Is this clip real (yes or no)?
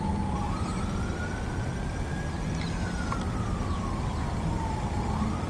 yes